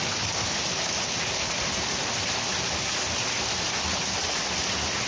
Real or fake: real